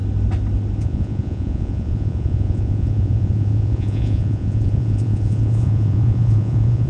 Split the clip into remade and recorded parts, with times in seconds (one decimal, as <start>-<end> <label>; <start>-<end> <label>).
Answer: 0.0-0.8 recorded; 0.8-6.9 remade